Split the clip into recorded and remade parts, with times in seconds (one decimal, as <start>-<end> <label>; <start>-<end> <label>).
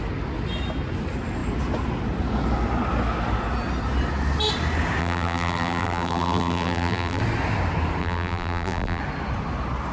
0.0-5.0 recorded; 5.0-7.2 remade; 7.2-8.0 recorded; 8.0-9.0 remade; 9.0-9.9 recorded